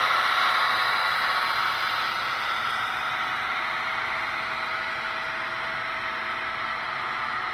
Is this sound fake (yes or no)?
no